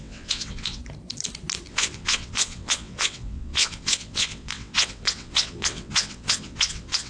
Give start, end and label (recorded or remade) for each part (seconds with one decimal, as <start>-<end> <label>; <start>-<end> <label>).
0.0-0.8 remade; 0.8-1.7 recorded; 1.7-7.1 remade